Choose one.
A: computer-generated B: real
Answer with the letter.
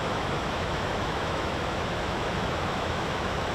A